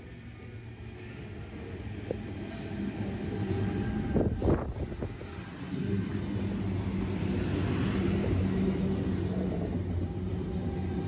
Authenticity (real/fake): real